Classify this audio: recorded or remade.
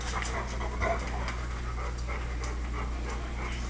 recorded